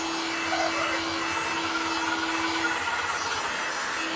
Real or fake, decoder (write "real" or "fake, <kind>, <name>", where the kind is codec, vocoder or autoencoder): real